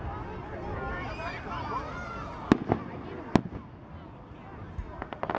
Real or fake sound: real